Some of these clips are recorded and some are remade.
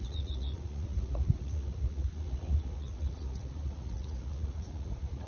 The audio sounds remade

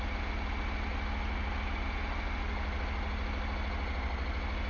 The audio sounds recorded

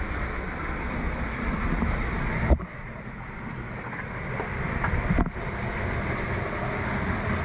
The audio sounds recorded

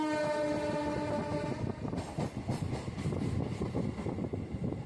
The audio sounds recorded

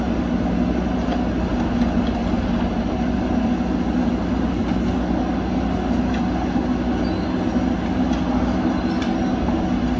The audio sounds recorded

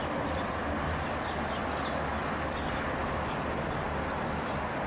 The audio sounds recorded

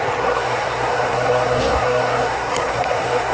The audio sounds remade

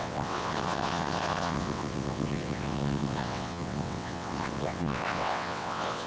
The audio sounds remade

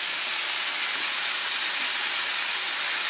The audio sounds recorded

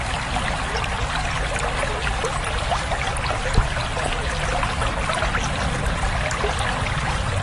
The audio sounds recorded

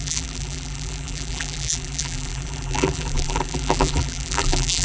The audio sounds remade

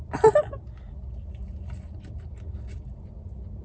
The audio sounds recorded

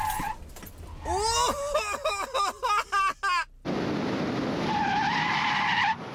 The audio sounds recorded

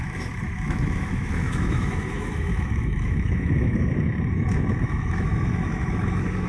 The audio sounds remade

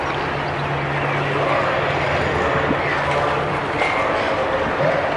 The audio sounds recorded